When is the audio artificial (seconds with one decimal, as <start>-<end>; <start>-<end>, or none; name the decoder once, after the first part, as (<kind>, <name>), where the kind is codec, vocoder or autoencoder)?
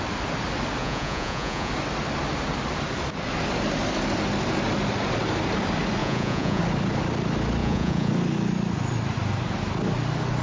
0.8-1.7 (vocoder, Vocos); 6.0-6.6; 7.6-8.1